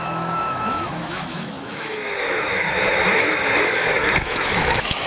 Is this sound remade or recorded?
remade